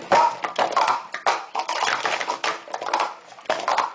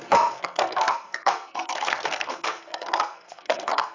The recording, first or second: first